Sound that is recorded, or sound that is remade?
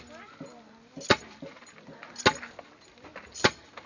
recorded